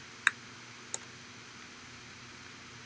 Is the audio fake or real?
real